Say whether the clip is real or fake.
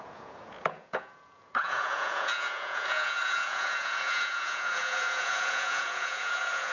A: fake